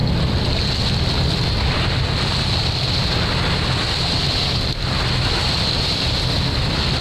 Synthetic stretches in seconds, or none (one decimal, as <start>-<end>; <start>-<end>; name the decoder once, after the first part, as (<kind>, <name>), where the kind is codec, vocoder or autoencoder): none